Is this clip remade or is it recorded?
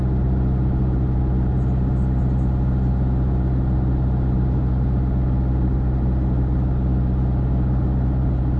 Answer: recorded